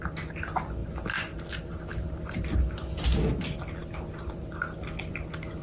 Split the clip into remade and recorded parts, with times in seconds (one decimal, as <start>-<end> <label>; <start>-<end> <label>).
0.0-5.6 recorded